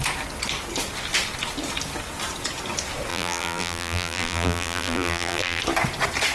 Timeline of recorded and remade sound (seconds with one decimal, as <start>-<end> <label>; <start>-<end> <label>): 0.0-3.1 recorded; 3.1-5.6 remade; 5.6-6.3 recorded